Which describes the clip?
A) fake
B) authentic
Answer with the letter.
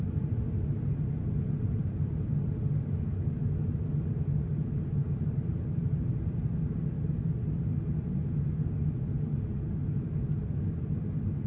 B